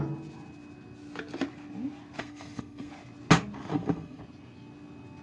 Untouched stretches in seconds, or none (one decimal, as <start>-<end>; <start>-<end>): 0.0-2.2; 2.9-3.7; 4.2-5.2